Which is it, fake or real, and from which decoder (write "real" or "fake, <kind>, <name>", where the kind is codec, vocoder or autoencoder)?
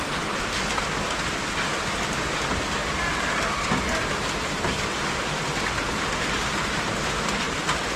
real